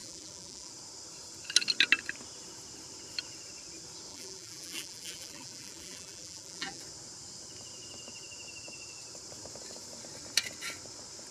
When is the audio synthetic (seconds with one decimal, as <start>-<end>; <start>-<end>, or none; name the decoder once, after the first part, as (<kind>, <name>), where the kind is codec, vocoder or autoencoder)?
0.0-0.7 (vocoder, BigVGAN v2); 4.1-6.8